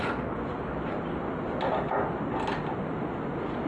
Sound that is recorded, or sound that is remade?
recorded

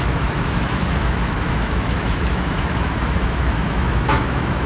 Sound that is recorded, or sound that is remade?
remade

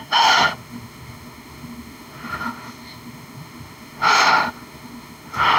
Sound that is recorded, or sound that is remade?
remade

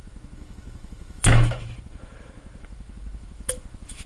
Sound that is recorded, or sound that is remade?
remade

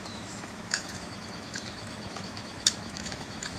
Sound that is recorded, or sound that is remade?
remade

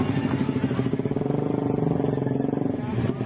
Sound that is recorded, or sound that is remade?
recorded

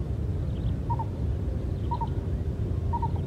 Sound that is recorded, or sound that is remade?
recorded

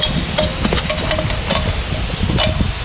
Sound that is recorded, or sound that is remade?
recorded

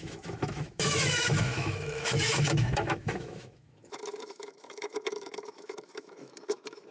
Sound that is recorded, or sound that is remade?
remade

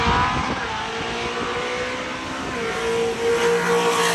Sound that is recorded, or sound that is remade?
recorded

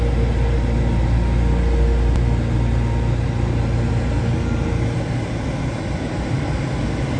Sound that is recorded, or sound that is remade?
recorded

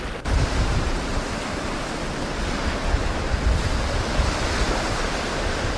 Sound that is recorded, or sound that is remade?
recorded